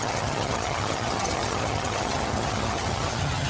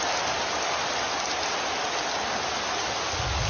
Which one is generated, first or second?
first